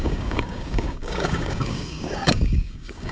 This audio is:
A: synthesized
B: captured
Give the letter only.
A